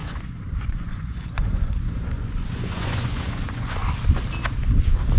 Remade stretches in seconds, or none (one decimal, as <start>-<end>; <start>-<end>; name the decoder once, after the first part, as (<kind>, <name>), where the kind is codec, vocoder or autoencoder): 0.0-3.8 (vocoder, Vocos)